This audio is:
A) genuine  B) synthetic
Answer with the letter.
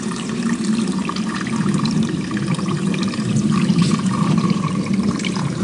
B